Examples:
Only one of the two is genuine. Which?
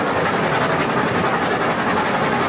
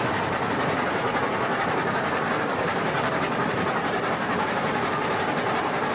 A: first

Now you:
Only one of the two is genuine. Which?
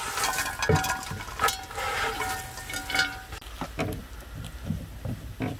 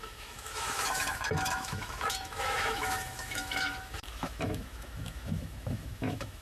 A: first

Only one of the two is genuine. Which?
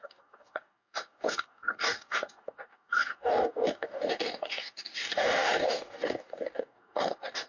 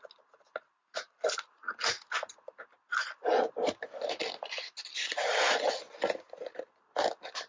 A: second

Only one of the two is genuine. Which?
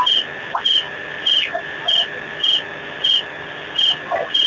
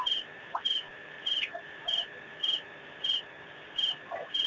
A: first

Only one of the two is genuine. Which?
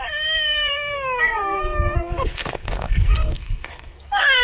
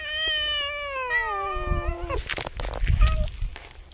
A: second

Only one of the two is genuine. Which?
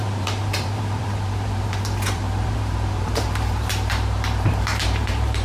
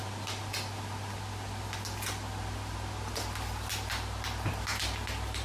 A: second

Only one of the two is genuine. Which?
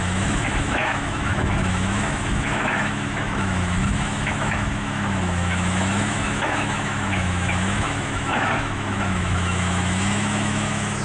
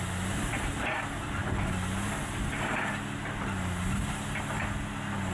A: second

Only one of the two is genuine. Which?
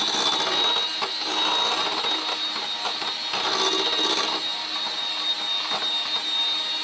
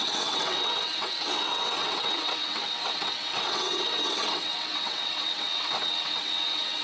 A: first